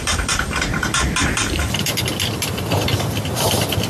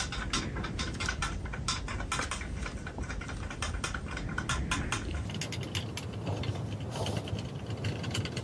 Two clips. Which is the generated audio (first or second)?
first